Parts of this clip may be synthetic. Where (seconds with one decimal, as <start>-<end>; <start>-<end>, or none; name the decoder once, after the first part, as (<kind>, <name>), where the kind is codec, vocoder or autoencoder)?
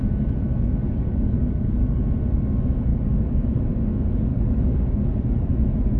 0.8-2.0 (codec, DAC); 2.9-3.6; 4.3-5.5